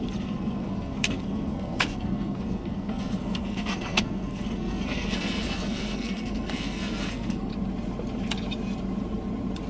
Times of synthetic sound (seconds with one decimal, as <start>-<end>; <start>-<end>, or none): 0.0-7.5